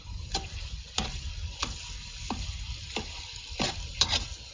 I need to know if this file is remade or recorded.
recorded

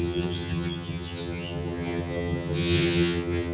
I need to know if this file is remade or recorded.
remade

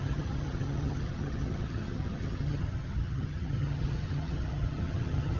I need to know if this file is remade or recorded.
remade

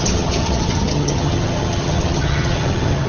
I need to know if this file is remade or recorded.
remade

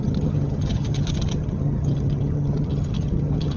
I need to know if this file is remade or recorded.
remade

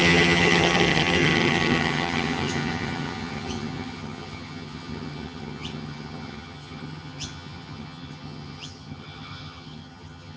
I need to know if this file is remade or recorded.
remade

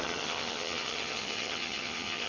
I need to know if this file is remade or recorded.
remade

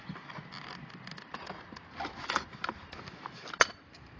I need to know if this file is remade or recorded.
recorded